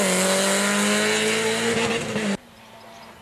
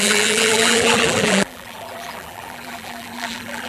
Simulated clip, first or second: second